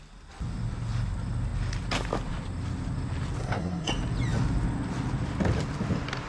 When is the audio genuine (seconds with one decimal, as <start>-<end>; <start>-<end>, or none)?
0.0-3.4; 3.9-6.3